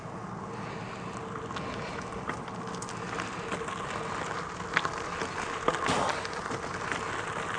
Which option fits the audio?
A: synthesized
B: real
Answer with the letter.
B